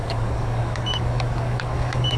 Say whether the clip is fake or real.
fake